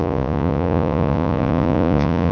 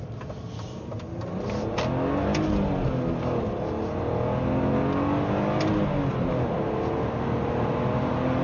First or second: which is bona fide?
second